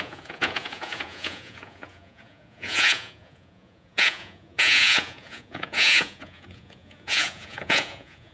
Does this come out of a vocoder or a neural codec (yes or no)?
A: yes